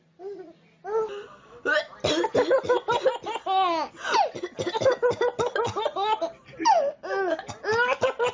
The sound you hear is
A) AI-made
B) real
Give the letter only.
B